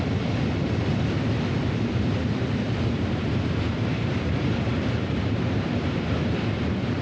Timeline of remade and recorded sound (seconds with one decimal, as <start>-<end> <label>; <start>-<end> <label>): 0.0-2.2 recorded; 2.2-5.7 remade; 5.7-7.0 recorded